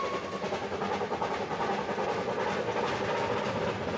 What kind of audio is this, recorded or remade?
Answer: recorded